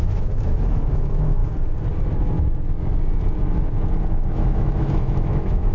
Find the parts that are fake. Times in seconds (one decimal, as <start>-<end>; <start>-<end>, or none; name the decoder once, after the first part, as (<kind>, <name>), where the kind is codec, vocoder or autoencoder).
0.0-1.4 (autoencoder, DAC-VAE); 4.1-5.7